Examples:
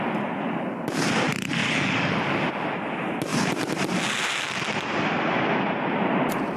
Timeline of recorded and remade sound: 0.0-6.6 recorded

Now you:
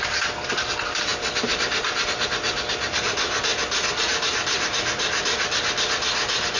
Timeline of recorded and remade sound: 0.0-6.6 recorded

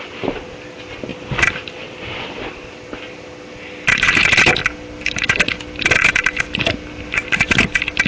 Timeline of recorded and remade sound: 0.0-8.1 recorded